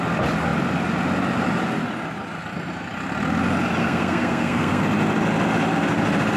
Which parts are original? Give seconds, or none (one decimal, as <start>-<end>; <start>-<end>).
0.0-3.8; 4.8-6.4